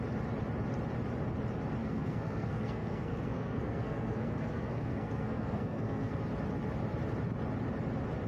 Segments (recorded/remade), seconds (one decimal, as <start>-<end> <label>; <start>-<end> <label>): 0.0-1.8 recorded; 1.8-6.2 remade; 6.2-8.3 recorded